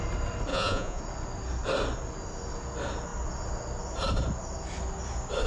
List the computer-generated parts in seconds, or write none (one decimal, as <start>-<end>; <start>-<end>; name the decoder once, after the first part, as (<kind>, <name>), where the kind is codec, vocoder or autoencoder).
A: 0.5-1.0 (vocoder, Vocos)